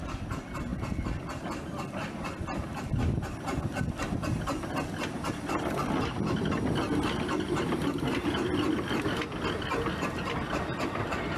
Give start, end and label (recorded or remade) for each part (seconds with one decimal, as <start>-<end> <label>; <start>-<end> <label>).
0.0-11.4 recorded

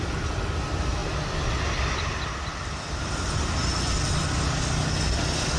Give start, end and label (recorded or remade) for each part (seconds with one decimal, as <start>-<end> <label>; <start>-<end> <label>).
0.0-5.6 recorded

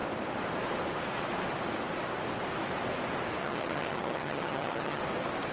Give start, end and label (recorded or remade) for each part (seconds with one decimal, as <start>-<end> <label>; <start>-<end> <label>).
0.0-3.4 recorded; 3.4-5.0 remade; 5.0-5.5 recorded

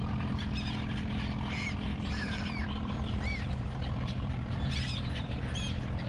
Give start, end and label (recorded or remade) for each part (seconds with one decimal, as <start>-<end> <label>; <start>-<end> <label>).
0.0-1.9 recorded; 1.9-5.6 remade; 5.6-6.1 recorded

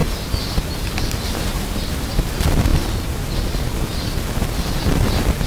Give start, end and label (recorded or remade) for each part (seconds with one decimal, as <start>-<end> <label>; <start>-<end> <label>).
0.0-5.5 recorded